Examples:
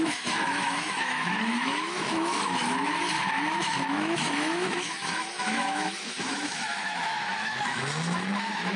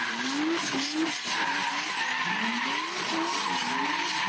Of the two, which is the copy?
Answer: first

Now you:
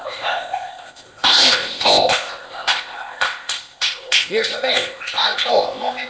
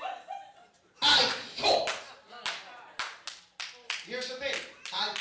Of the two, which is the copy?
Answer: first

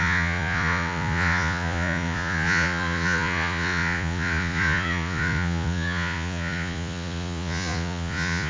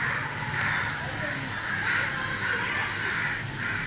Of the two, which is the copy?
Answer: first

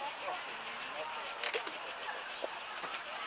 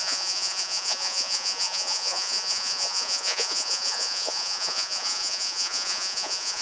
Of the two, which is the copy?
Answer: second